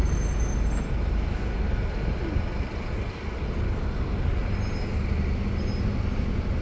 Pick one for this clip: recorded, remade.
recorded